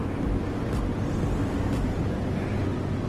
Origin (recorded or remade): recorded